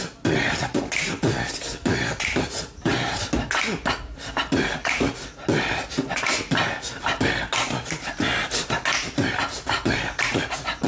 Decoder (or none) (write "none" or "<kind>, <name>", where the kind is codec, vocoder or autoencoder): none